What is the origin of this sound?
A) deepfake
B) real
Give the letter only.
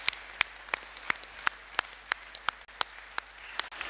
B